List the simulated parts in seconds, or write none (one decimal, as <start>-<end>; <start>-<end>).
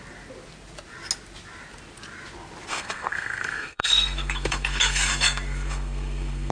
2.7-6.5